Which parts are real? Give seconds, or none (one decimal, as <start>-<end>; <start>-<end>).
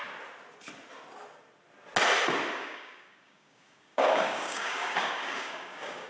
0.0-2.6